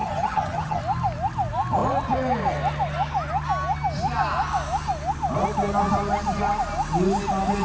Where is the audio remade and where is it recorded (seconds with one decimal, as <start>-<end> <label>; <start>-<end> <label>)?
0.0-0.8 remade; 0.8-7.6 recorded